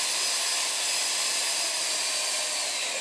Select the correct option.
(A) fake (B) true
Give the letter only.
B